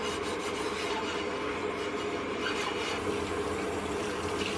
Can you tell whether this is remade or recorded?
recorded